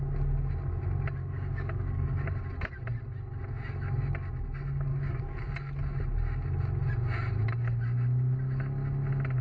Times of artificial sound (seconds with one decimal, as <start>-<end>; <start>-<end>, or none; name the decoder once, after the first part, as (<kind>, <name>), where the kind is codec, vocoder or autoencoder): 1.2-2.3 (codec, DAC); 4.9-5.5